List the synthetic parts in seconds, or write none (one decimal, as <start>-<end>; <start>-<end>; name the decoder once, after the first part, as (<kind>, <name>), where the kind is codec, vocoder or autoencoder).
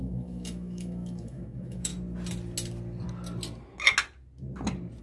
0.0-1.9 (autoencoder, DAC-VAE)